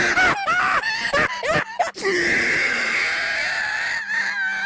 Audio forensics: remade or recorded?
recorded